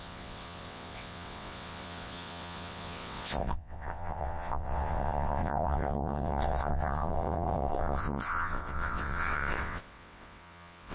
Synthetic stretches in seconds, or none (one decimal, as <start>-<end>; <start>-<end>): 0.0-10.9